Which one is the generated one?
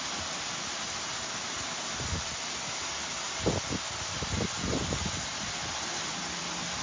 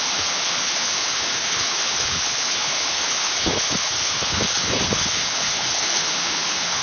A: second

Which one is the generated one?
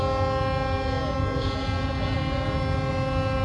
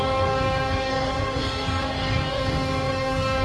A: second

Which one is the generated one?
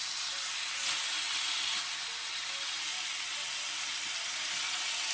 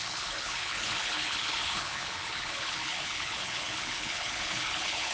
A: second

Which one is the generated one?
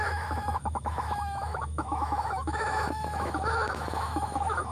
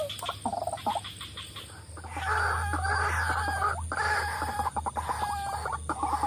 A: first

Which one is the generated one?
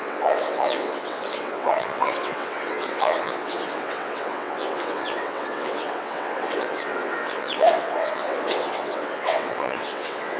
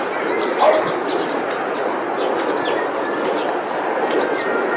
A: first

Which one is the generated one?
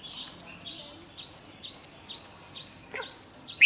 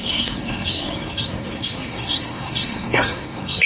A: second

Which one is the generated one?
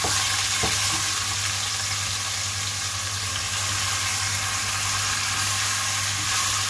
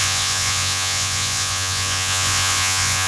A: second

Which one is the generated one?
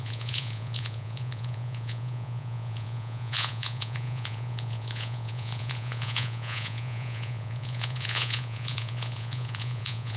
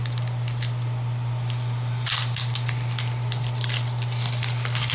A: first